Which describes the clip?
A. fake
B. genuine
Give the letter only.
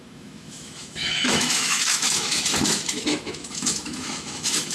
A